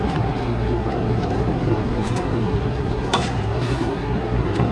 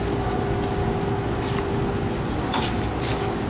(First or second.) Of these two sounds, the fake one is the first